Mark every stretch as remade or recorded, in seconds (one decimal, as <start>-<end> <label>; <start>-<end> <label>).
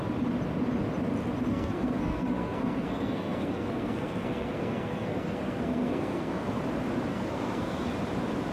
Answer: 0.0-1.5 recorded; 1.5-6.6 remade; 6.6-7.1 recorded; 7.1-7.9 remade; 7.9-8.5 recorded